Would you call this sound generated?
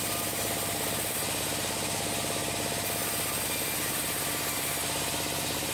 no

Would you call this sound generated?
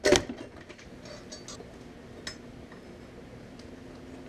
no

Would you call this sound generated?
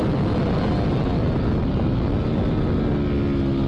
no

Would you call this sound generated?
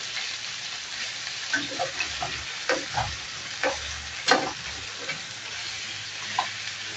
yes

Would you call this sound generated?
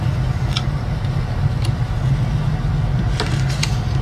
no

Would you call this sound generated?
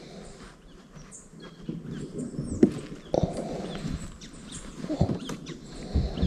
no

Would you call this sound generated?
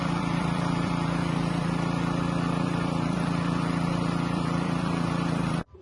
yes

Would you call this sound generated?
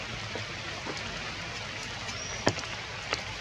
no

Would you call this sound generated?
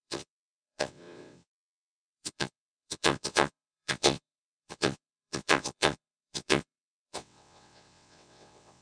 yes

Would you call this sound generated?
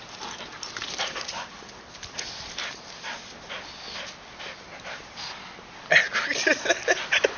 no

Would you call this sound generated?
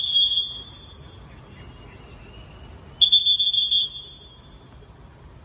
no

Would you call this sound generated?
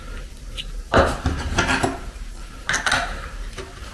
no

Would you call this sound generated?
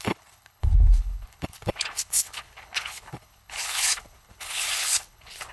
yes